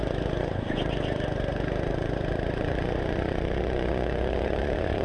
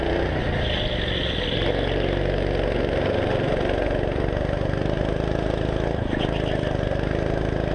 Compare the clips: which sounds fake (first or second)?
first